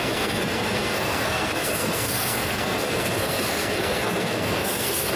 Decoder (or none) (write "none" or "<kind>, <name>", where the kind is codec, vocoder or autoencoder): codec, SNAC